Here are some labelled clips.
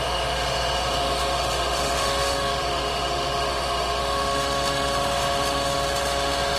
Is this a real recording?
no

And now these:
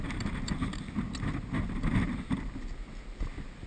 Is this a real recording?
yes